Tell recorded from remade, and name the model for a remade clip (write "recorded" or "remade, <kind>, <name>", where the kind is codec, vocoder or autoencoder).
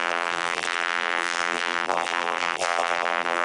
remade, vocoder, BigVGAN v2